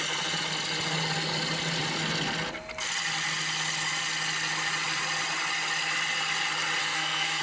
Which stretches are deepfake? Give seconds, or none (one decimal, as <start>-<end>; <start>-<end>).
6.8-7.4

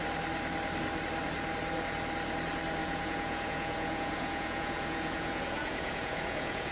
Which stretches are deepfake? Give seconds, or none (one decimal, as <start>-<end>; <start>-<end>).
2.8-6.7

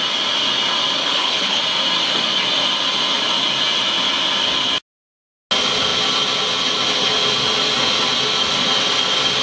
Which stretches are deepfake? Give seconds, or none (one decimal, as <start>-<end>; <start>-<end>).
1.0-1.6

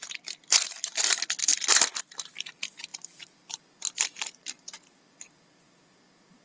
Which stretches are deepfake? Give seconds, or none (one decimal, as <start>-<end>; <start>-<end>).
1.5-2.0; 2.9-3.6

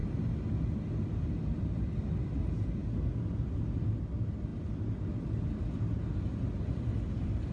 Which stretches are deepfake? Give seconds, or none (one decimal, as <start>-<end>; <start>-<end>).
none

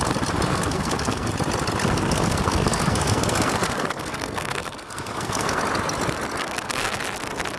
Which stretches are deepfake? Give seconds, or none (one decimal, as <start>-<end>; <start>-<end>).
0.5-1.3; 1.8-5.6; 6.4-7.0

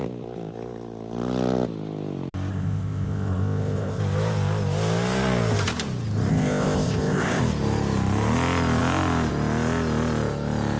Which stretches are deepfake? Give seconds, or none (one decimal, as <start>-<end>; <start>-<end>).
2.5-4.0; 6.3-7.4